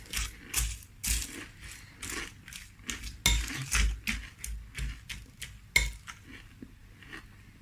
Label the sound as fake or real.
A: real